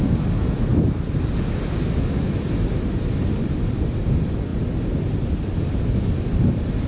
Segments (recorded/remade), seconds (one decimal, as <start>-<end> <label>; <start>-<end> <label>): 0.0-6.9 recorded